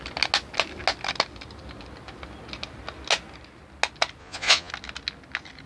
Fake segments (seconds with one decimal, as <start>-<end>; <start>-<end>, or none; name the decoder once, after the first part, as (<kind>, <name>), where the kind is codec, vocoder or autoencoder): 4.2-4.7 (vocoder, Vocos)